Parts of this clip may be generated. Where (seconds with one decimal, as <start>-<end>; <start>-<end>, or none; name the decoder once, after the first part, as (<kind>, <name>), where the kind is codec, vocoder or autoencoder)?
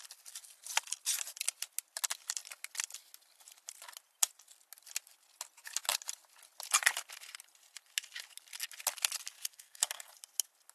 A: 9.5-10.1 (codec, SNAC)